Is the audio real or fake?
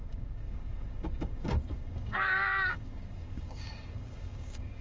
fake